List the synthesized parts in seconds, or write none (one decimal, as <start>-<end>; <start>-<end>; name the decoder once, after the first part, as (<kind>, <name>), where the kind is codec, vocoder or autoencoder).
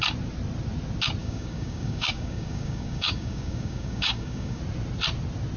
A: 1.2-4.6 (codec, DAC)